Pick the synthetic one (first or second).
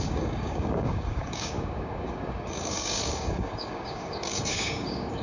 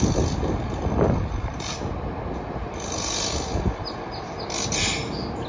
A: first